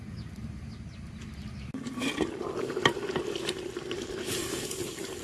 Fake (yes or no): no